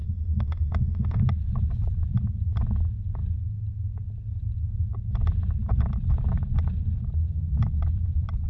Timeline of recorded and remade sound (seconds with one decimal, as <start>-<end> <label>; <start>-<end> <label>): 0.0-1.2 remade; 1.2-8.5 recorded